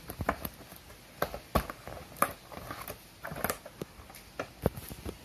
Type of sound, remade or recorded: recorded